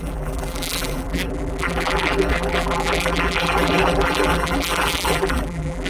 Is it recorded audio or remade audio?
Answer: remade